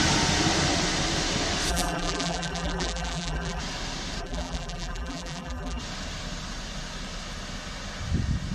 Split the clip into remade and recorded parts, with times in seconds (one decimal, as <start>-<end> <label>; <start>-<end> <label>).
0.0-1.7 recorded; 1.7-3.6 remade; 3.6-4.2 recorded; 4.2-5.8 remade; 5.8-8.5 recorded